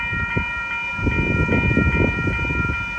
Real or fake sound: real